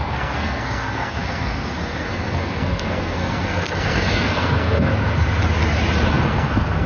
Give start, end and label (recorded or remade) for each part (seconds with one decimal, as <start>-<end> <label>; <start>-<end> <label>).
0.0-4.9 remade; 4.9-6.1 recorded; 6.1-6.9 remade